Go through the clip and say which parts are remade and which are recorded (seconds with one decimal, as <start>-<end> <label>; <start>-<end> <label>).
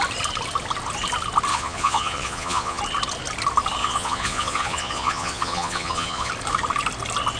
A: 0.0-1.5 recorded; 1.5-2.8 remade; 2.8-3.8 recorded; 3.8-6.3 remade; 6.3-7.4 recorded